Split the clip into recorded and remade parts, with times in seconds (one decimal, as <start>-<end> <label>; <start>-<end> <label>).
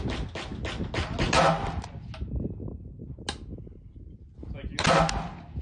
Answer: 0.0-5.6 recorded